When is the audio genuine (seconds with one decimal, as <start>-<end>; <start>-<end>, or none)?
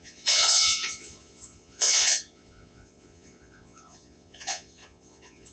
none